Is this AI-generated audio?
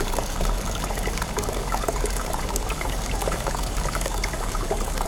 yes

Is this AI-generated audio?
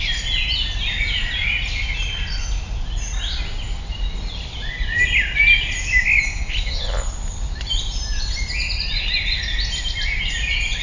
no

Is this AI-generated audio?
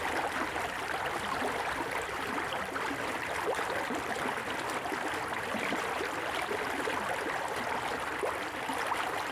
no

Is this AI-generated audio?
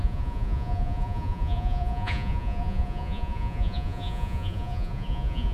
yes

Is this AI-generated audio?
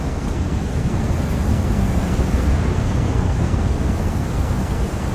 yes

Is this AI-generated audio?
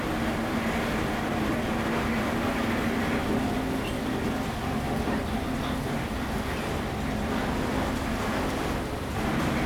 no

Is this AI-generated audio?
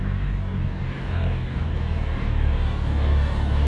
yes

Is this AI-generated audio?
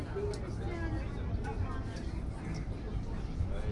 no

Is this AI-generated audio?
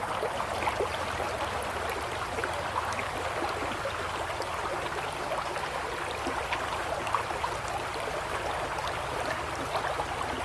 no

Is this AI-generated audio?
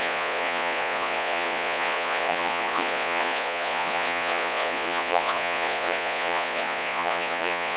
yes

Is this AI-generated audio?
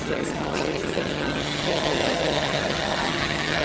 yes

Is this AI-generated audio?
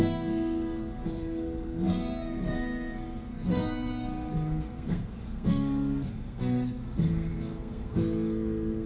yes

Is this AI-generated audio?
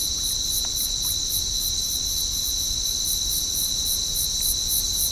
no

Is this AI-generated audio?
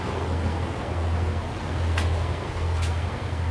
yes